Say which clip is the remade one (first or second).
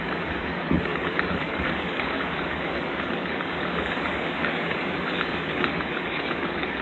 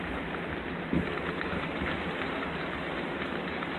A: first